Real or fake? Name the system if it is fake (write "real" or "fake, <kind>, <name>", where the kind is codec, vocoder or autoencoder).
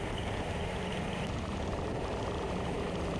real